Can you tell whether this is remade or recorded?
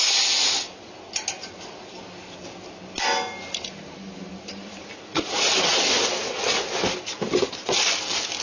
recorded